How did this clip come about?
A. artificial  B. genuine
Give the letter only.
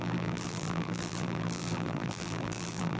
A